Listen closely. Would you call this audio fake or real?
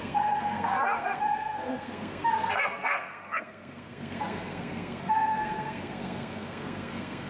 fake